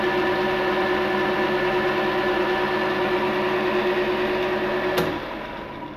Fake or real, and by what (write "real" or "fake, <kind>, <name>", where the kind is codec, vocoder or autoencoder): real